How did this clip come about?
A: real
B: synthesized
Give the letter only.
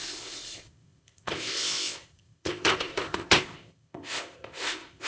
B